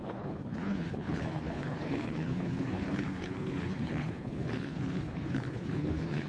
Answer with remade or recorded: remade